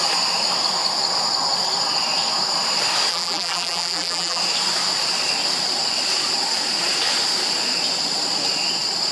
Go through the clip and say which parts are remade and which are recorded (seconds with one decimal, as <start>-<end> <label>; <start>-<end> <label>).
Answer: 0.0-3.1 recorded; 3.1-4.4 remade; 4.4-9.1 recorded